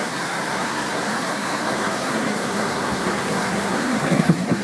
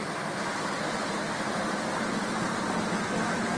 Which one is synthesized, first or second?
first